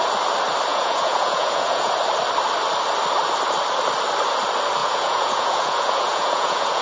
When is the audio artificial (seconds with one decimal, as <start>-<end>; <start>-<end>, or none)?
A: 0.7-1.9; 4.8-6.8